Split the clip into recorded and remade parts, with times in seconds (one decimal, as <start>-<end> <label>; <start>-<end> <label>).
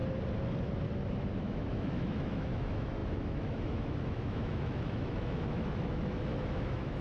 0.0-1.4 recorded; 1.4-7.0 remade